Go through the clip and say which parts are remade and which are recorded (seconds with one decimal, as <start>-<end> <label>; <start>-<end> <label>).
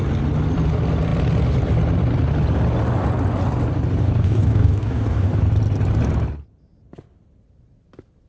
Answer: 0.0-4.0 recorded; 4.0-5.4 remade; 5.4-8.3 recorded